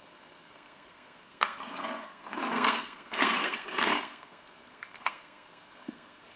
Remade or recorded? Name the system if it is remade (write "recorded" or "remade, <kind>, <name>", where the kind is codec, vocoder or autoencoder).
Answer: remade, codec, SNAC